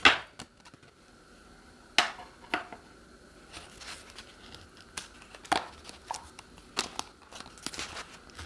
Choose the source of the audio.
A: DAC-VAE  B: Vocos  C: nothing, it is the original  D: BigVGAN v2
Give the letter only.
C